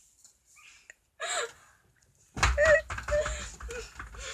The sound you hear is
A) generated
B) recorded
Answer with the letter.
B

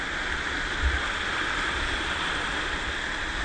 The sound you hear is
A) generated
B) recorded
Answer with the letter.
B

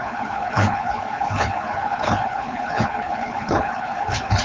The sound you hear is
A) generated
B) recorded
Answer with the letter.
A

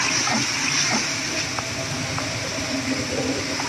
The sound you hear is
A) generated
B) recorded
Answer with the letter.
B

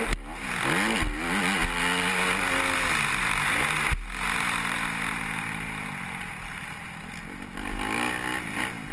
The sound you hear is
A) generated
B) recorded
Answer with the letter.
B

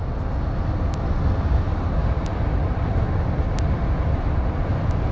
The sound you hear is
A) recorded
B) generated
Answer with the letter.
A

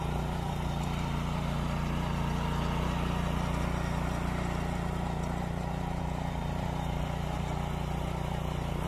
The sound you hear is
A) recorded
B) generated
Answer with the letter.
A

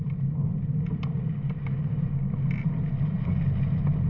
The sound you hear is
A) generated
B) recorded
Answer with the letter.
B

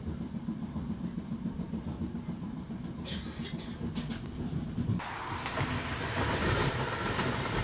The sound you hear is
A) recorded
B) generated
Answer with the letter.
A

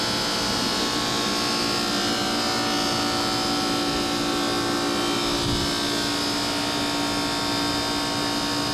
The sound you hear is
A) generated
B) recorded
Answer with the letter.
B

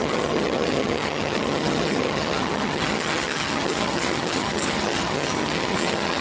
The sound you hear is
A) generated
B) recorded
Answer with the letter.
A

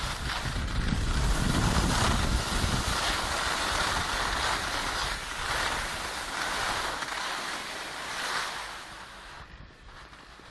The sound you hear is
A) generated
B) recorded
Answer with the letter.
B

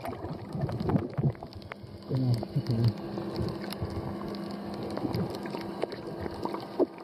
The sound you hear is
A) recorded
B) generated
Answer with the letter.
A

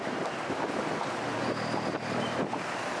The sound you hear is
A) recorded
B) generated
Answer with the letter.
A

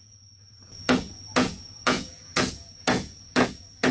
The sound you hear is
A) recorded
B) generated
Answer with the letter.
B